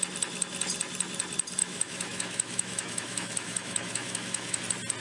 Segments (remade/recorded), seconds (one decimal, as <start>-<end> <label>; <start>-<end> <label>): 0.0-1.6 recorded; 1.6-4.6 remade; 4.6-5.0 recorded